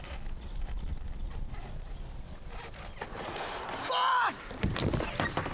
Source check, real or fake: fake